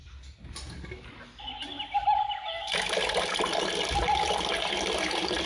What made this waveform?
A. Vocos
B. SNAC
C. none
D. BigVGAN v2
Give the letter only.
C